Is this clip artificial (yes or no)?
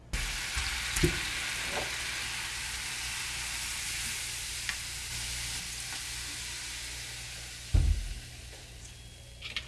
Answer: no